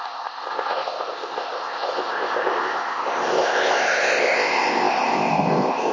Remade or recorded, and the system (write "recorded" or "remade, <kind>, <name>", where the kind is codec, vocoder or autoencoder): remade, codec, ZipCodec